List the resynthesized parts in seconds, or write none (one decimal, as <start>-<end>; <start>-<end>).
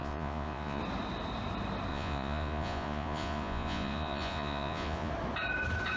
0.0-0.8; 1.9-5.1